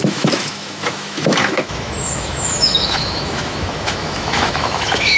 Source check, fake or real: fake